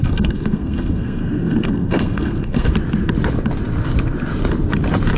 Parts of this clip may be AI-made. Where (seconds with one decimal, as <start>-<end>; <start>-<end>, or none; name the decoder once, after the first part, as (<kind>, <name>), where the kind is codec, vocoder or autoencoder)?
0.0-2.7 (codec, SNAC)